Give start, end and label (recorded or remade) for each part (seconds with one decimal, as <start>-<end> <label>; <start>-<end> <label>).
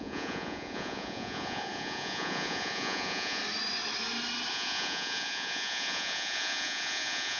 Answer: 0.0-3.4 remade; 3.4-4.5 recorded; 4.5-7.4 remade